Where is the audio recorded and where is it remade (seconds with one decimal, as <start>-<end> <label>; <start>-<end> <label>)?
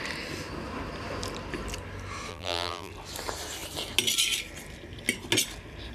0.0-2.3 recorded; 2.3-2.9 remade; 2.9-5.9 recorded